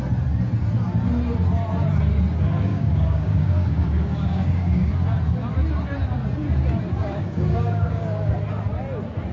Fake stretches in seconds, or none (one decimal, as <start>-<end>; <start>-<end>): 2.7-4.9; 7.0-8.3